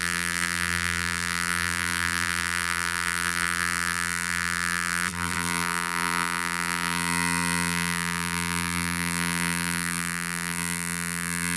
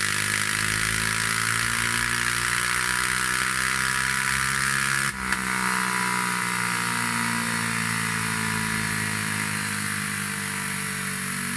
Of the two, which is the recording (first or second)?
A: second